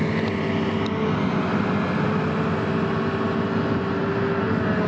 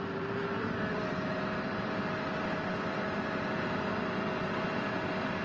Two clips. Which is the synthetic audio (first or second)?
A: second